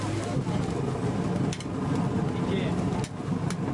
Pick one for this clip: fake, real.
real